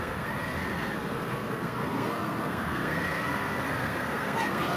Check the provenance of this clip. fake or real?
fake